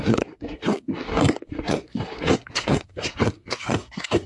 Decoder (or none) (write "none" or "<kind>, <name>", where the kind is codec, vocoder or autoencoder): codec, SNAC